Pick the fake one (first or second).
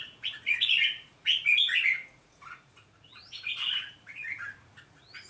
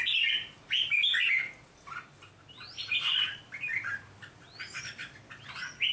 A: first